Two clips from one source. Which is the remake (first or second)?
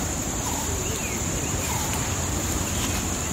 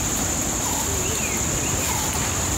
first